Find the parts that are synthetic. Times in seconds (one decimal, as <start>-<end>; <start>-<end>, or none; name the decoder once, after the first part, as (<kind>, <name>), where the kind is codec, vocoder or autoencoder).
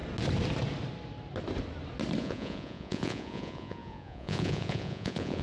2.2-5.4 (vocoder, Vocos)